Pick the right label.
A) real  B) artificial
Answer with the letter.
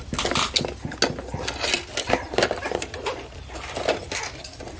A